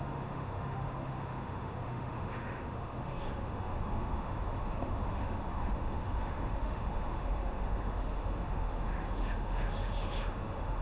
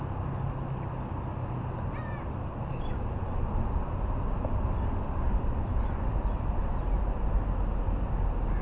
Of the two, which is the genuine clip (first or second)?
second